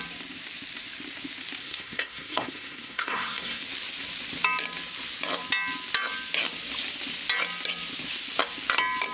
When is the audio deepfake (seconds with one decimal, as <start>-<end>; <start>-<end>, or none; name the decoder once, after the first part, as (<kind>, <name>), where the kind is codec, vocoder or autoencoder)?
1.6-3.6 (codec, SNAC)